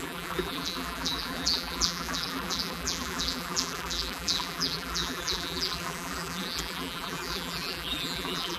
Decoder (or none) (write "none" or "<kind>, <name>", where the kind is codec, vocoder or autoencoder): vocoder, BigVGAN v2